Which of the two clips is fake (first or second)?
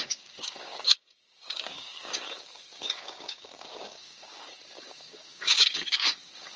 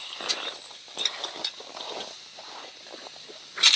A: first